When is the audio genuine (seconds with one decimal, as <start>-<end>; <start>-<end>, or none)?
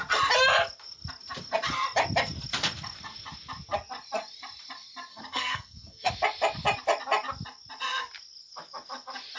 0.0-5.1; 6.1-9.4